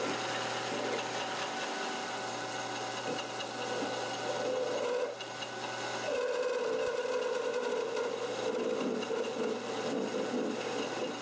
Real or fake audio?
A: real